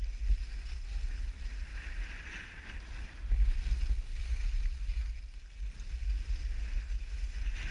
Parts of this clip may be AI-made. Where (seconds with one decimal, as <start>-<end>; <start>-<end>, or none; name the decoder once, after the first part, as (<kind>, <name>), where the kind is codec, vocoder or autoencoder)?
none